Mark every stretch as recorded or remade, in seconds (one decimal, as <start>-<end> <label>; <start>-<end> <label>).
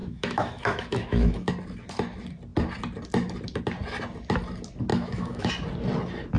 0.0-1.5 remade; 1.5-4.9 recorded; 4.9-5.5 remade; 5.5-6.4 recorded